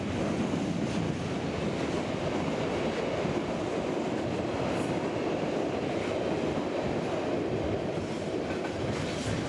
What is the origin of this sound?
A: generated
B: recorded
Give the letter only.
B